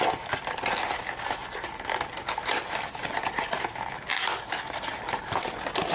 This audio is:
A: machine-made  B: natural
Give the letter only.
B